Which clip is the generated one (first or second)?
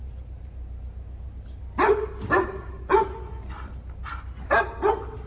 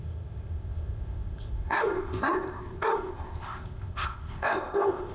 second